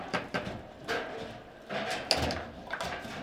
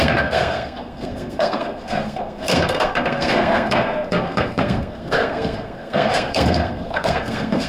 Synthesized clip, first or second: second